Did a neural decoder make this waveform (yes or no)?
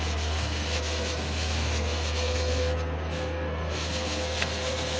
yes